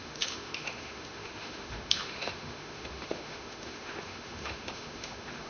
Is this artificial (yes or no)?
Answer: yes